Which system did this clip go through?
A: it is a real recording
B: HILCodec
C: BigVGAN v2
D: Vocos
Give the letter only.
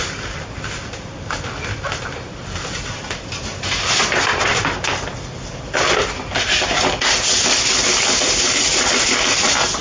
A